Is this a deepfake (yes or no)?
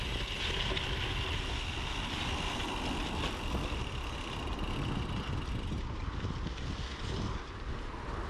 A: no